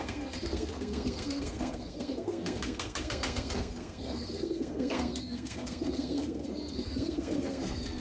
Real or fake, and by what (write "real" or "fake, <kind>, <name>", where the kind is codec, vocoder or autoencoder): fake, codec, SNAC